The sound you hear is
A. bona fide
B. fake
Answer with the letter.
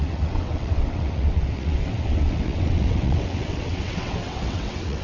B